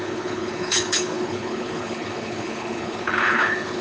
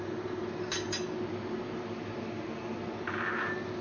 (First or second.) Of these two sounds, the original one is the second